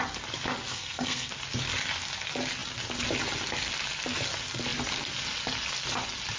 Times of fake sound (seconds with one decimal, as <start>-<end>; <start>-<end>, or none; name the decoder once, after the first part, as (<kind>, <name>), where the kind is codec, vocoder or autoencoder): 0.7-1.3 (codec, SNAC)